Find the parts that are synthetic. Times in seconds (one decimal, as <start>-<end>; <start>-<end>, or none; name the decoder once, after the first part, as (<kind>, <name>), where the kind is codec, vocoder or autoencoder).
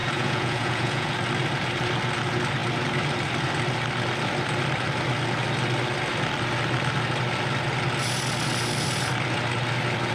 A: 0.0-1.1 (vocoder, Vocos)